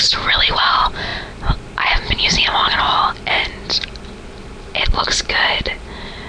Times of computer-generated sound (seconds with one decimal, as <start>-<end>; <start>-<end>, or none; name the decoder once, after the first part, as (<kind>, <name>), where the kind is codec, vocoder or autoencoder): none